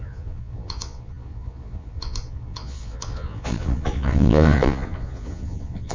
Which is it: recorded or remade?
remade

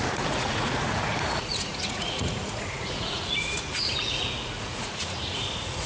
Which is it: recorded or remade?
remade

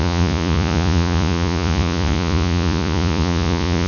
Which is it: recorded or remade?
remade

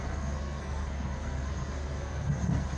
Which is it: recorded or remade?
remade